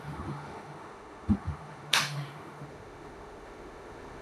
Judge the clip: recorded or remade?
remade